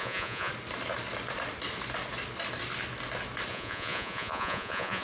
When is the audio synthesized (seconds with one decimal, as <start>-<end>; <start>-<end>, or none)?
0.0-0.5; 3.5-5.0